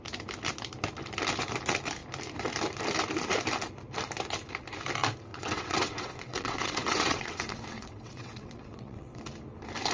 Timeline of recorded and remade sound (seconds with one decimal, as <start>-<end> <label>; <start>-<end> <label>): 0.0-5.3 recorded; 5.3-9.2 remade; 9.2-9.9 recorded